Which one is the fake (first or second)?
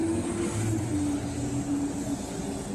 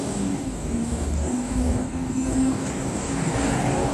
second